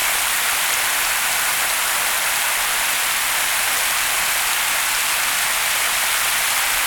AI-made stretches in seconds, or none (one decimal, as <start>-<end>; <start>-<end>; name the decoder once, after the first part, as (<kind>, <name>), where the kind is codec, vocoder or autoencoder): 0.0-0.5 (vocoder, BigVGAN v2)